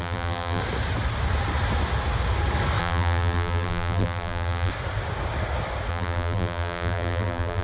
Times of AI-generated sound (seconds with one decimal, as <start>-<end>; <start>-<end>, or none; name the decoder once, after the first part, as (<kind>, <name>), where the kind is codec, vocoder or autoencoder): 0.0-0.6 (vocoder, BigVGAN v2); 2.8-4.7; 5.9-7.6